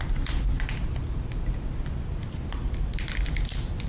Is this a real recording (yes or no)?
yes